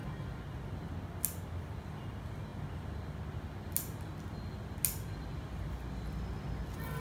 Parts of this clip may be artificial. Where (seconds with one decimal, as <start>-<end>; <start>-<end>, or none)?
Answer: none